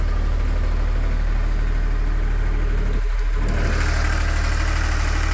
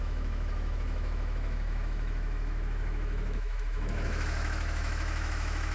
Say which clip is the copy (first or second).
second